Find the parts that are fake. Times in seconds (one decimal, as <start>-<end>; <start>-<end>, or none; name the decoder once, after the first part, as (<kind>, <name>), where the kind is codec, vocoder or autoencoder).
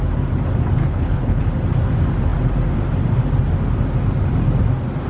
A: 0.8-1.4 (codec, HILCodec)